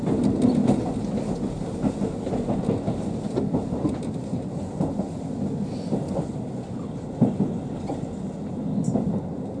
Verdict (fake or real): real